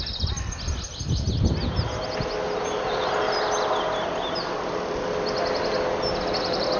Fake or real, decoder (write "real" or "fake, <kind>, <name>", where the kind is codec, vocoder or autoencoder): real